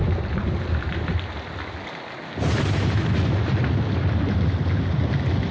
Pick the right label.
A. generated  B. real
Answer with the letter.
B